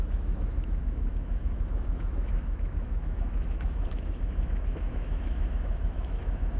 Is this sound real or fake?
fake